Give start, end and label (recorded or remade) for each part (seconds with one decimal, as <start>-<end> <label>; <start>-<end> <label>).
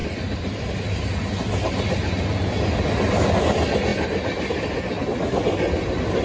0.0-6.2 recorded